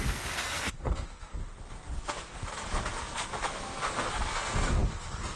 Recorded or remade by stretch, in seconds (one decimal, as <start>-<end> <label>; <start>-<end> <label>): 0.0-1.4 remade; 1.4-1.9 recorded; 1.9-5.4 remade